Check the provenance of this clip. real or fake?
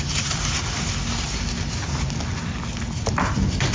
real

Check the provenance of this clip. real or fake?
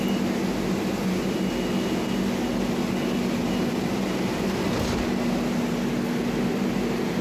real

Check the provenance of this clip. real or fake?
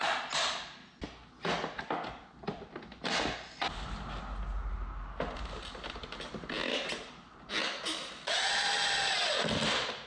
real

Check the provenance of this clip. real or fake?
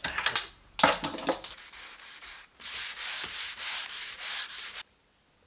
real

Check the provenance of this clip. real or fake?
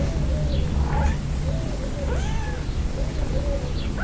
real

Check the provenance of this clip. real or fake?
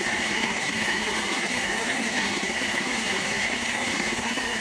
fake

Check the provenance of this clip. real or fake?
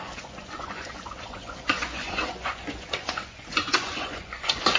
fake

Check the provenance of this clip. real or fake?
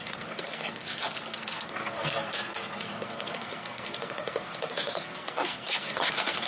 fake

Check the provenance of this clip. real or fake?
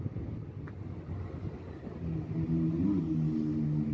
real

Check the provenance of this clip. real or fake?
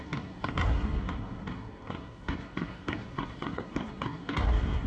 fake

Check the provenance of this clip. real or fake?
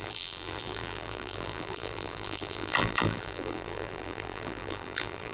fake